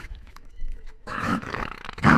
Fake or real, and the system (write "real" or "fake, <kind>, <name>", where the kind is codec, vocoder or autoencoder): fake, autoencoder, DAC-VAE